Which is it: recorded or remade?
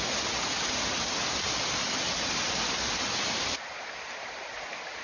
recorded